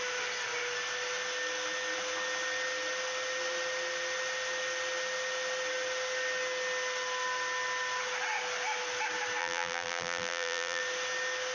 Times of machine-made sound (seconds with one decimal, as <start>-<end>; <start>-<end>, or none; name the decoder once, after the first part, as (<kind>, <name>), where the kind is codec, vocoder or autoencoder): 9.4-10.8 (vocoder, BigVGAN v2)